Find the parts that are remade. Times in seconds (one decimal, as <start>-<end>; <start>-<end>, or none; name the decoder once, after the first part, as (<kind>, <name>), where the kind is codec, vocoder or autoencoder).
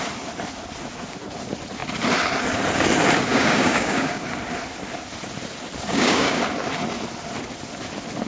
3.3-4.2 (codec, DAC); 5.9-6.4